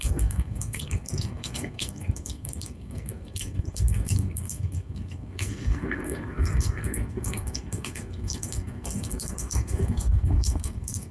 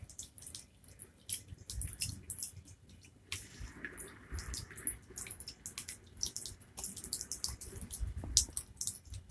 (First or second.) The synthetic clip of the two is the first